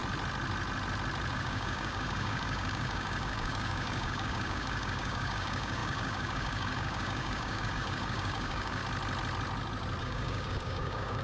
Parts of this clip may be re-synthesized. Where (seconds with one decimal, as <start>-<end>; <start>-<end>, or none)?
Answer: 1.3-8.8; 10.0-11.2